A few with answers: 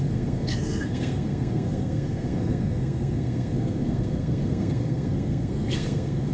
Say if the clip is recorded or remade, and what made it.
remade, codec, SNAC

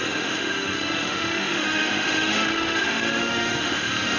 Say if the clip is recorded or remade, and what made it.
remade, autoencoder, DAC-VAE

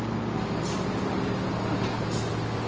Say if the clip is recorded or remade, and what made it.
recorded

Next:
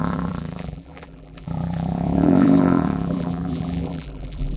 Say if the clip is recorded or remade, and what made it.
remade, vocoder, BigVGAN v2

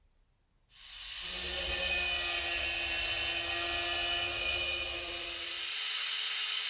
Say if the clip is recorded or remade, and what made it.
recorded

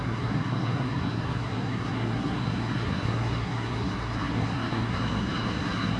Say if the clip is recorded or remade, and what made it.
remade, codec, SNAC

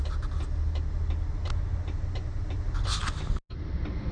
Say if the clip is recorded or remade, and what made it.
recorded